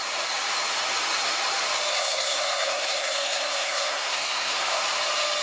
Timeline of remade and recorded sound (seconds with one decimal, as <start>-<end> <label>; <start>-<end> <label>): 0.0-1.9 recorded; 1.9-4.8 remade; 4.8-5.4 recorded